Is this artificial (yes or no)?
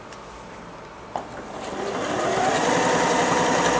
no